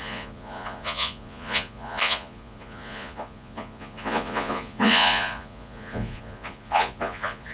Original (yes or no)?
no